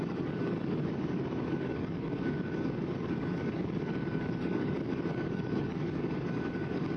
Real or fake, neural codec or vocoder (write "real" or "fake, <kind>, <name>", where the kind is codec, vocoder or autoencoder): fake, codec, DAC